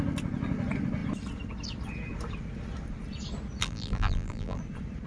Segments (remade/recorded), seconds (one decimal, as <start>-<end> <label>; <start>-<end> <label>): 0.0-3.6 recorded; 3.6-4.6 remade; 4.6-5.1 recorded